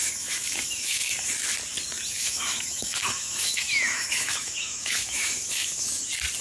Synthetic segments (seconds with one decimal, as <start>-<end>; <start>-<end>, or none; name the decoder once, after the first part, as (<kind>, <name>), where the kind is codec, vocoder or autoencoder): 0.0-1.3 (autoencoder, DAC-VAE); 2.2-6.0